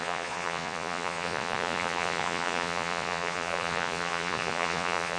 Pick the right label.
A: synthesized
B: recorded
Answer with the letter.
A